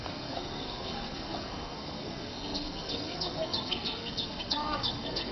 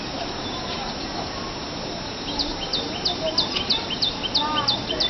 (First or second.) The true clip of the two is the second